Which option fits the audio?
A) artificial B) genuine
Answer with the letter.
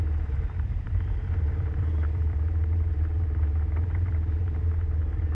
A